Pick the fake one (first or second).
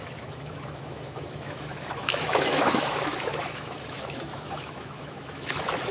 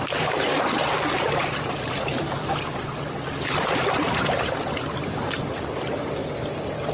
first